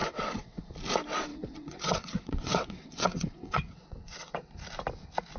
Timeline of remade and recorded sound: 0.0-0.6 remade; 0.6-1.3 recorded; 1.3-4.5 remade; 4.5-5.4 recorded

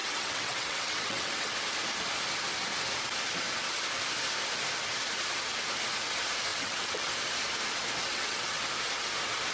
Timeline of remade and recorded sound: 0.0-1.5 remade; 1.5-6.5 recorded; 6.5-7.1 remade; 7.1-8.1 recorded; 8.1-8.6 remade; 8.6-9.5 recorded

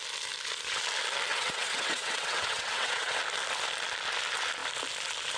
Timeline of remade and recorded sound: 0.0-1.3 recorded; 1.3-3.2 remade; 3.2-5.4 recorded

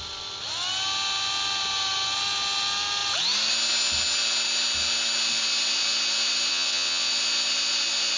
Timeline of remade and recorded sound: 0.0-6.5 recorded; 6.5-7.1 remade; 7.1-8.2 recorded

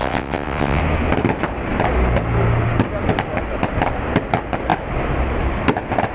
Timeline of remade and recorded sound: 0.0-0.8 remade; 0.8-6.1 recorded